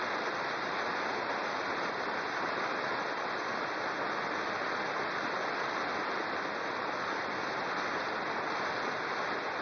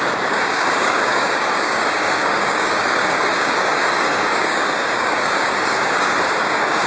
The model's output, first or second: second